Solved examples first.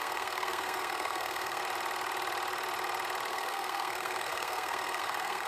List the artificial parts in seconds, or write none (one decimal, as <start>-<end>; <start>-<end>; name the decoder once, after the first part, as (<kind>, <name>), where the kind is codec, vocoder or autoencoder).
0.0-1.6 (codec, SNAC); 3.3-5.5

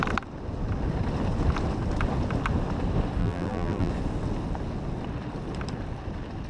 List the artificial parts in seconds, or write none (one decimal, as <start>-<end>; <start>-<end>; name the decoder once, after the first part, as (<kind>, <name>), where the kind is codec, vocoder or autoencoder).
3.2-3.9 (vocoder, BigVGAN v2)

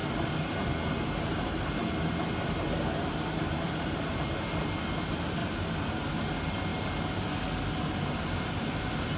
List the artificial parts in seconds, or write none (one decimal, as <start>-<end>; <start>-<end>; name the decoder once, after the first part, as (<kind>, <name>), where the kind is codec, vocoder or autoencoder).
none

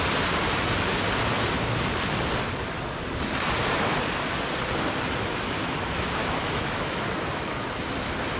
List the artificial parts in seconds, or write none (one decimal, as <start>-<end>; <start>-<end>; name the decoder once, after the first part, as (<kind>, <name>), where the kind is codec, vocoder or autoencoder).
6.2-7.0 (autoencoder, DAC-VAE)

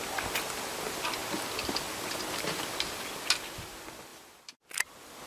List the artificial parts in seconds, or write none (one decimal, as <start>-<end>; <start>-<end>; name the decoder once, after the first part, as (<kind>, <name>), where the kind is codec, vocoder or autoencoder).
none